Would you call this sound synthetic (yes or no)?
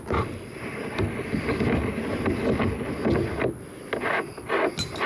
no